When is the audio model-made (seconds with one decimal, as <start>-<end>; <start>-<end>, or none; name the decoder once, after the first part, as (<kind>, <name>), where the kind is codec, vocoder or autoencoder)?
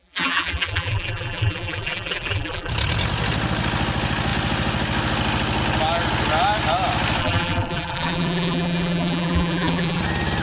0.0-2.7 (vocoder, BigVGAN v2); 7.2-10.0